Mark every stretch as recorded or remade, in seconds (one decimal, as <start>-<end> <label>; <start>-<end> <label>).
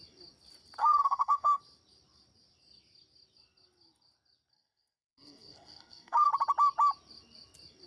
0.0-0.8 recorded; 0.8-1.6 remade; 1.6-4.5 recorded; 4.5-6.3 remade; 6.3-7.9 recorded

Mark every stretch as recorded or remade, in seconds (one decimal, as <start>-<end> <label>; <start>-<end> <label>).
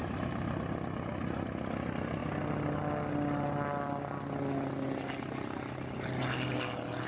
0.0-7.1 recorded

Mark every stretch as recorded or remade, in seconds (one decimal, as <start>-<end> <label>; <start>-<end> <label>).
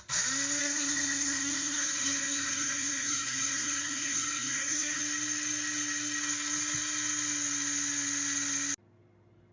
0.0-0.6 recorded; 0.6-5.0 remade; 5.0-9.5 recorded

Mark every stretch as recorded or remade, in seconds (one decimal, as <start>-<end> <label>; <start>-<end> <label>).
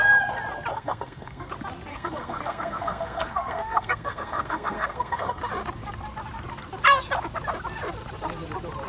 0.0-0.7 recorded; 0.7-1.5 remade; 1.5-1.9 recorded; 1.9-5.4 remade; 5.4-8.9 recorded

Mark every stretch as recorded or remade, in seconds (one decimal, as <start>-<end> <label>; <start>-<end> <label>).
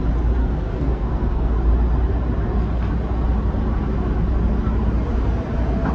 0.0-0.4 recorded; 0.4-1.5 remade; 1.5-5.9 recorded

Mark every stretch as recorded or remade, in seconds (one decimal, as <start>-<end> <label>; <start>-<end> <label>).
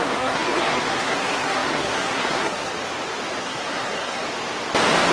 0.0-2.7 remade; 2.7-3.4 recorded; 3.4-4.2 remade; 4.2-5.1 recorded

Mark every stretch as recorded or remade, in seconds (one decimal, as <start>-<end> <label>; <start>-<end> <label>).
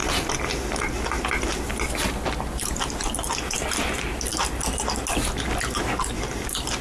0.0-6.8 recorded